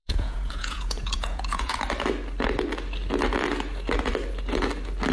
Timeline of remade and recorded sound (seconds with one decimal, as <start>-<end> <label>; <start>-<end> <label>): 0.0-1.8 remade; 1.8-5.1 recorded